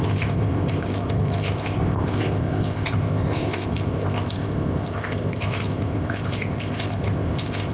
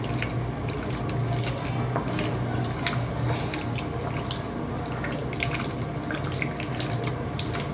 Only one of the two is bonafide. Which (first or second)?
second